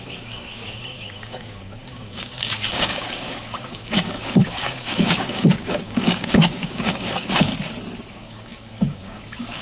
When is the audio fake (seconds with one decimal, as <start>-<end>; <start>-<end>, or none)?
0.0-7.5; 8.1-9.6